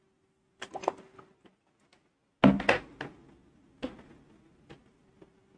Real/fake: real